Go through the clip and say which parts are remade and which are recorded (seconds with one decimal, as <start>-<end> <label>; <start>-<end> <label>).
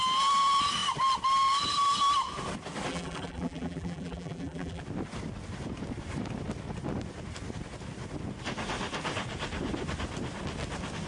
0.0-2.9 recorded; 2.9-4.8 remade; 4.8-11.1 recorded